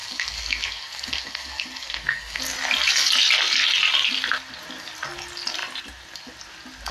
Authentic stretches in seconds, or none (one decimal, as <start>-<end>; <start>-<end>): 2.4-6.9